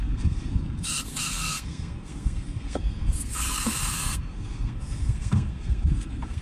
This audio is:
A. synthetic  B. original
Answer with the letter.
A